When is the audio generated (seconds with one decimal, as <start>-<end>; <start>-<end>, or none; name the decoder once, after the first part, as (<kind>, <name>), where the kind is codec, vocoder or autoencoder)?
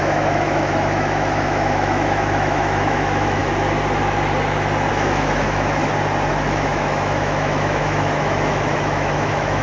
0.0-3.4 (autoencoder, DAC-VAE); 4.9-5.8; 6.3-9.6